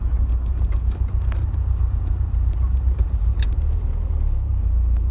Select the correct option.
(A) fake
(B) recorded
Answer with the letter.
A